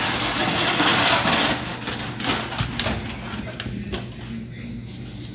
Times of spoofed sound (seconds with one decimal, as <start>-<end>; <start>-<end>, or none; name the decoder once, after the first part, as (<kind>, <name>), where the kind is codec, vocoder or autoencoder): none